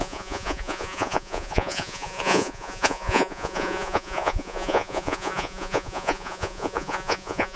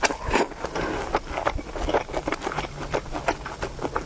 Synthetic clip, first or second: first